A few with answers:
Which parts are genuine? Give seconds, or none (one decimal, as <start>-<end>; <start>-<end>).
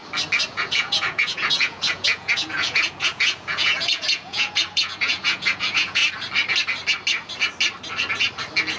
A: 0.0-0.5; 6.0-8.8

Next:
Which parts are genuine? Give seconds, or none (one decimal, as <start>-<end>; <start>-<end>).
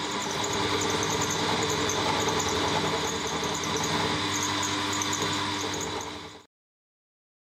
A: 0.0-1.1; 2.6-7.5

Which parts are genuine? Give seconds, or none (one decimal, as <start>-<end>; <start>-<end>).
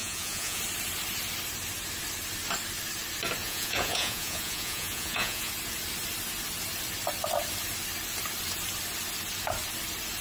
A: 0.6-3.4; 5.5-10.2